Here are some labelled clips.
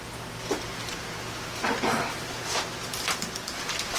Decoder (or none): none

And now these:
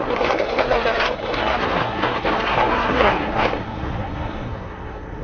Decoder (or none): codec, SNAC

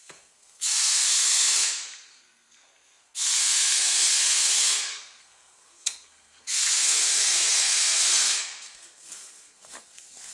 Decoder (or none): codec, SNAC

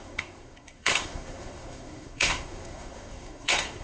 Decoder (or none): codec, SNAC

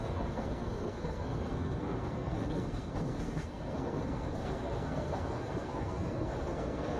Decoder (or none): codec, SNAC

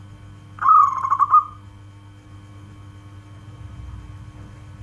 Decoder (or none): none